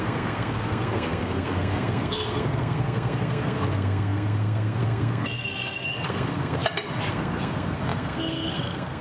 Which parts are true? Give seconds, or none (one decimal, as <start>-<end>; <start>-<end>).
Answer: 6.6-7.1